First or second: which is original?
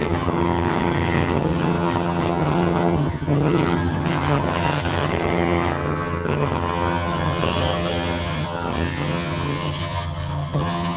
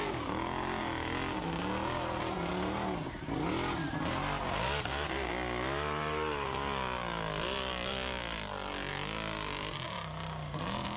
second